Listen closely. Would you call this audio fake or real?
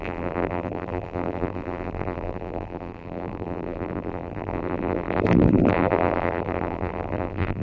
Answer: fake